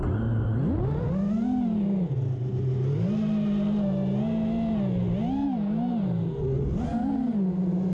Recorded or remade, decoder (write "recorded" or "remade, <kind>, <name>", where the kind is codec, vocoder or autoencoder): recorded